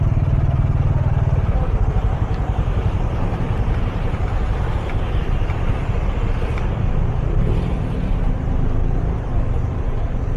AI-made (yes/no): yes